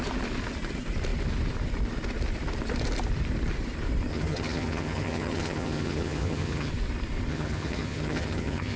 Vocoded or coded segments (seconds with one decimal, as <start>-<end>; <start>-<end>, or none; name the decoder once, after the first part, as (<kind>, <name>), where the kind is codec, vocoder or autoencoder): 4.1-6.7 (vocoder, HiFi-GAN); 7.3-8.8